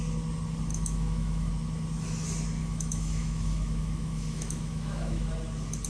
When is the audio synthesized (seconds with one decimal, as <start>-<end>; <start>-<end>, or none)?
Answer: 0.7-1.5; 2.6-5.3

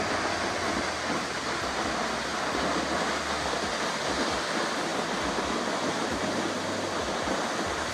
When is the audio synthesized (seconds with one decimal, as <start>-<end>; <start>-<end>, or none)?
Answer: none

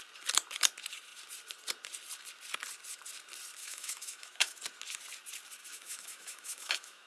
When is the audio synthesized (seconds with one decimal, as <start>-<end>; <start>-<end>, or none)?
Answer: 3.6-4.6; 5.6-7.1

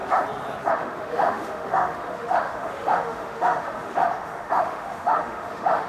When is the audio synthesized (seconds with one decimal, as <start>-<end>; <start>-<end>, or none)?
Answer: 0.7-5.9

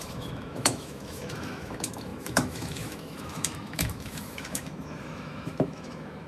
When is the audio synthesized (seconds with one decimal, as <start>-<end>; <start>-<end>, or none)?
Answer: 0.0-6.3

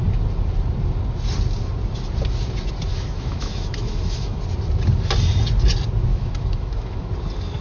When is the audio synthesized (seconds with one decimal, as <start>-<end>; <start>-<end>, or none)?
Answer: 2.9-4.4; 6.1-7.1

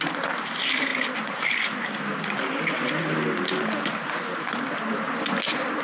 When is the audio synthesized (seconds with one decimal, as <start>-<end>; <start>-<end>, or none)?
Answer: none

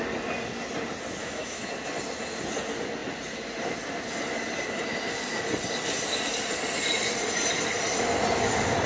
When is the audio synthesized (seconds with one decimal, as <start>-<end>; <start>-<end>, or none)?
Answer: 1.2-1.7